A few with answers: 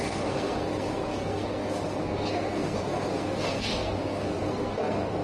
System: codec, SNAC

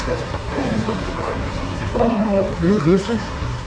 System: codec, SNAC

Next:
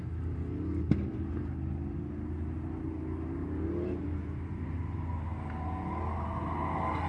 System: none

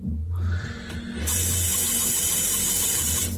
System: none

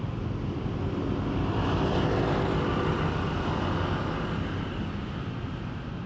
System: none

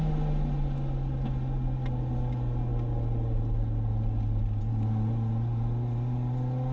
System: none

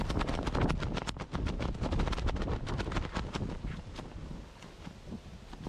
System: none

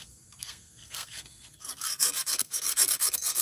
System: codec, SNAC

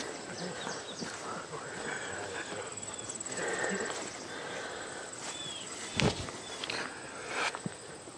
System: none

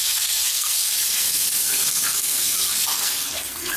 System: codec, SNAC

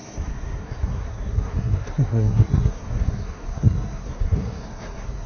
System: codec, SNAC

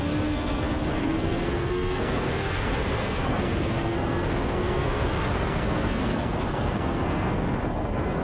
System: codec, SNAC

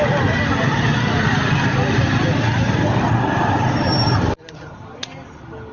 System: none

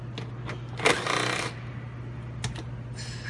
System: none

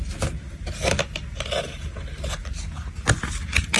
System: none